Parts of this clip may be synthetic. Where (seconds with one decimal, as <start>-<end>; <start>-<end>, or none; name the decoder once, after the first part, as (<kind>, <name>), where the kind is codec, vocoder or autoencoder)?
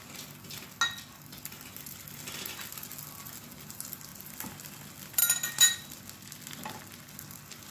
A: none